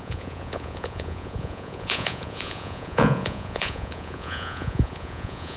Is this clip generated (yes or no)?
yes